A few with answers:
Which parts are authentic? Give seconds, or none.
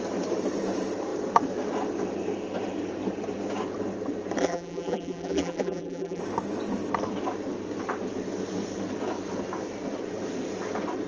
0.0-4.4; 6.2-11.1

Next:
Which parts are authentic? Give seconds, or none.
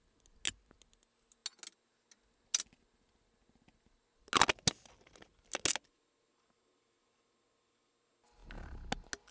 0.0-9.3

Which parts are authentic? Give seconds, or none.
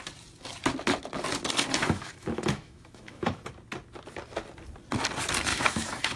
0.0-1.8; 3.5-5.5